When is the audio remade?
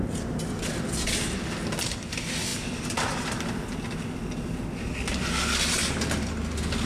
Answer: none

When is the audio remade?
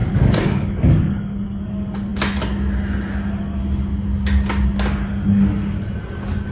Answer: 0.0-1.6 (codec, DAC)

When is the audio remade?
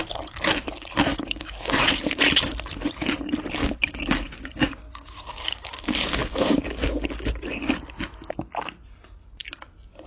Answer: 1.1-2.0 (codec, DAC); 3.6-7.7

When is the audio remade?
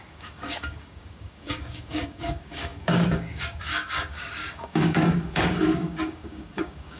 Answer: 0.0-7.0 (codec, DAC)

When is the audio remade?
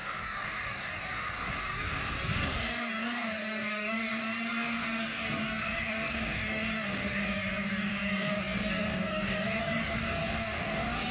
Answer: 0.0-11.1 (codec, DAC)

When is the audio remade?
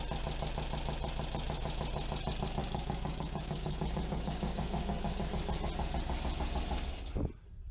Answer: 2.6-5.3 (codec, DAC)